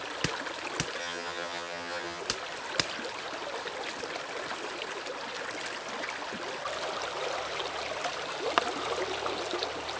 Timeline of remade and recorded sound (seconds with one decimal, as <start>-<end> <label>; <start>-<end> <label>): 0.0-1.0 recorded; 1.0-2.2 remade; 2.2-10.0 recorded